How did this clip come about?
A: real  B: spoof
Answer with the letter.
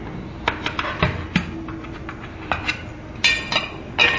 A